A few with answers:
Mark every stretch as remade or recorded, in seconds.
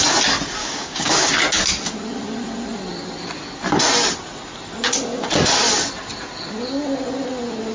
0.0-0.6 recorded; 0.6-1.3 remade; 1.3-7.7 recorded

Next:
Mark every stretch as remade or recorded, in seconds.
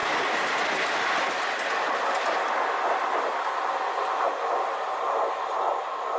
0.0-6.2 recorded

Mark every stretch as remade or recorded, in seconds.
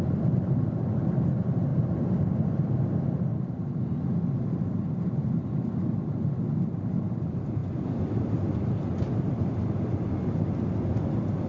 0.0-11.5 recorded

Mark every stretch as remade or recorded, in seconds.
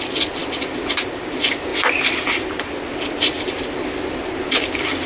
0.0-5.1 recorded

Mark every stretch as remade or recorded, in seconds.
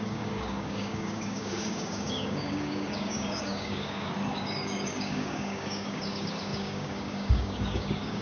0.0-8.2 remade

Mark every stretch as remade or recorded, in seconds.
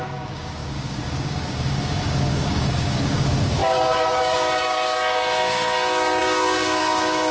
0.0-7.3 remade